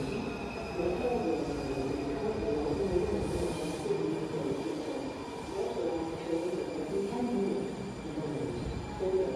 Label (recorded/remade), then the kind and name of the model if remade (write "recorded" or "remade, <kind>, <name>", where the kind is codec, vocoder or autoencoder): recorded